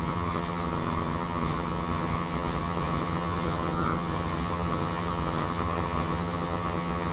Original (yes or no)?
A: no